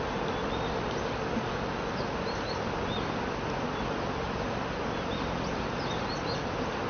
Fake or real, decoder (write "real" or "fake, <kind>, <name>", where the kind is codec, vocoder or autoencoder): real